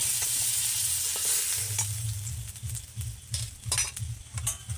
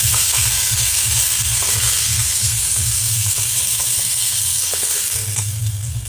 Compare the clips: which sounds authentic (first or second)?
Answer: first